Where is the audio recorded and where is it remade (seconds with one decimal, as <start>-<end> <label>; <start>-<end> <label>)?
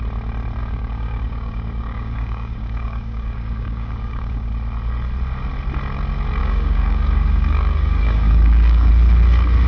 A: 0.0-0.6 recorded; 0.6-4.5 remade; 4.5-6.4 recorded; 6.4-8.9 remade; 8.9-9.7 recorded